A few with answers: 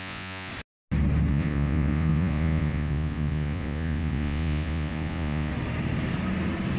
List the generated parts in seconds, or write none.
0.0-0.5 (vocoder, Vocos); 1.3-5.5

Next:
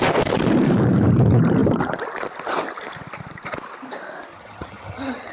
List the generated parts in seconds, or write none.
4.3-5.3 (vocoder, HiFi-GAN)

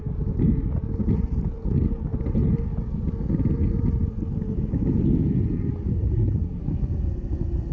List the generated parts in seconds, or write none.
5.9-6.6 (codec, SNAC)

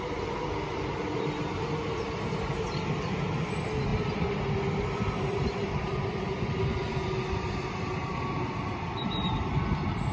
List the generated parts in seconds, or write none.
none

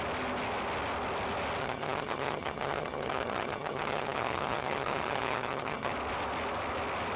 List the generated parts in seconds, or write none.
1.6-5.9 (vocoder, HiFi-GAN)

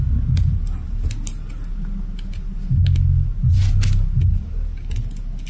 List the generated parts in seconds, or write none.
none